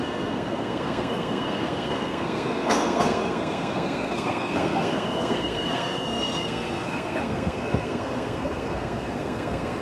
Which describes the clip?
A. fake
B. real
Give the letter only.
A